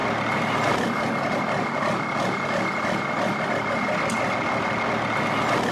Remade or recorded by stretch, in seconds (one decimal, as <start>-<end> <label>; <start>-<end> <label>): 0.0-5.7 recorded

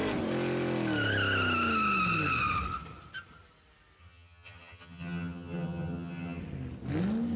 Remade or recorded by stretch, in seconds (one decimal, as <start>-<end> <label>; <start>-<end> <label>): 0.0-4.0 recorded; 4.0-6.4 remade; 6.4-7.4 recorded